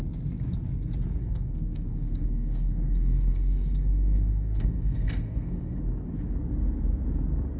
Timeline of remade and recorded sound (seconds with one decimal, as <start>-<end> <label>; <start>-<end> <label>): 0.0-1.2 recorded; 1.2-5.8 remade; 5.8-7.6 recorded